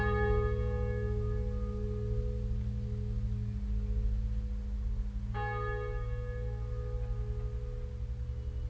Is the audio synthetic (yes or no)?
no